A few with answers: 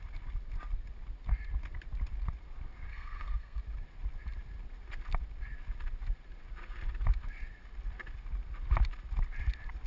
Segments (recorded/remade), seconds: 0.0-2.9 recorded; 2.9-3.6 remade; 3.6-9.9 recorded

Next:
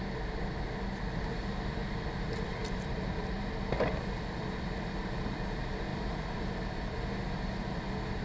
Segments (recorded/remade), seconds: 0.0-2.6 recorded; 2.6-3.9 remade; 3.9-5.9 recorded; 5.9-6.5 remade; 6.5-8.2 recorded

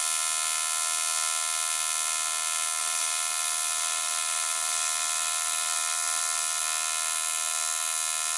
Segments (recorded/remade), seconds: 0.0-2.8 recorded; 2.8-6.6 remade; 6.6-8.4 recorded

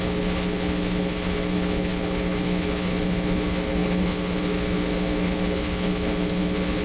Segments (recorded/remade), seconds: 0.0-6.8 remade